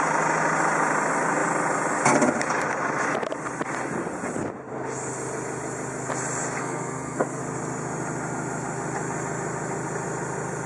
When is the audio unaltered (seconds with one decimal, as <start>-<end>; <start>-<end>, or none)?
0.0-6.6; 7.4-10.7